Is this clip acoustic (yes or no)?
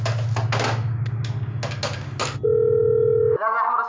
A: yes